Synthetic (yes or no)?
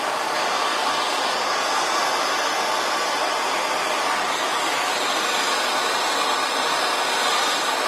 no